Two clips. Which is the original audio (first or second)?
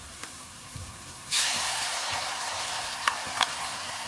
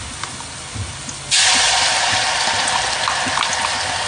second